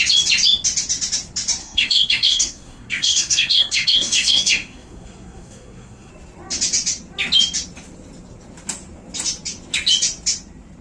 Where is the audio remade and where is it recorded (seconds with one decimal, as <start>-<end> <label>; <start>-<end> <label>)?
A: 0.0-1.6 recorded; 1.6-6.1 remade; 6.1-10.8 recorded